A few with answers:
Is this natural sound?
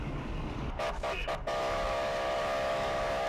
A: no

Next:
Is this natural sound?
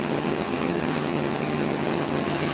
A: no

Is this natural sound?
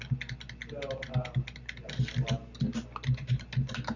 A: yes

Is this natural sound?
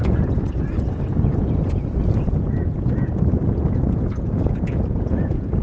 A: no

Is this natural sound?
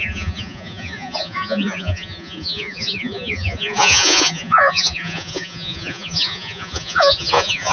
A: no